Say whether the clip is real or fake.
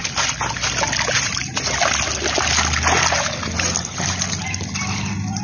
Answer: real